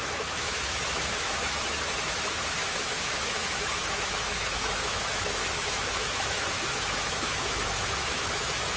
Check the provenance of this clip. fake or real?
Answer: fake